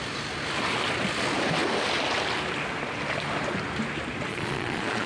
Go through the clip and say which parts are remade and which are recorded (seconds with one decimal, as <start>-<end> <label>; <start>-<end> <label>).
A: 0.0-4.3 recorded; 4.3-5.1 remade